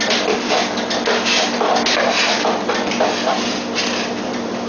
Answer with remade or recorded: recorded